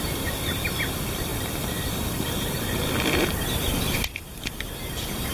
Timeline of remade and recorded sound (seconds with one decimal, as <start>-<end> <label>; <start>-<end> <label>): 0.0-5.3 recorded

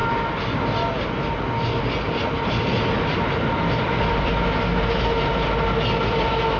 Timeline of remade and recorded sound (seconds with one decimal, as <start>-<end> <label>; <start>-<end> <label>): 0.0-6.6 recorded